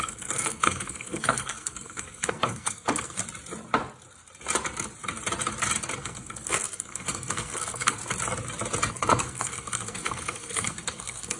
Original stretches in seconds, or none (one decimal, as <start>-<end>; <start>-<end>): 3.2-6.0; 8.0-8.9